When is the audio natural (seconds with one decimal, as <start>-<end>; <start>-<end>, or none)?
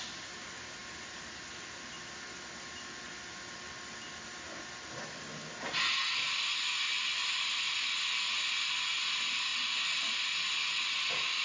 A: 0.0-9.5; 10.6-11.4